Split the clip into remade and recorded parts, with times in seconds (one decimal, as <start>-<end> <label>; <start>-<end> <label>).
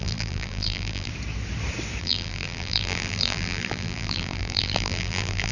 0.0-1.1 remade; 1.1-2.0 recorded; 2.0-5.5 remade